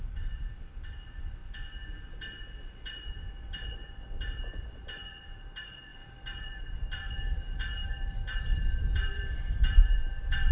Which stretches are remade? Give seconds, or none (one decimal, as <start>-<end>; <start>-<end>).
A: 0.0-1.4; 2.4-10.5